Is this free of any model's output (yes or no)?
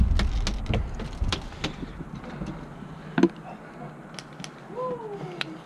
yes